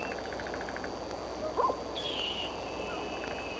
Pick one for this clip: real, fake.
real